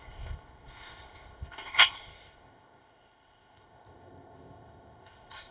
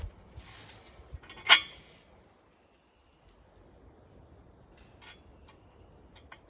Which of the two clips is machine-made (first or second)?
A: first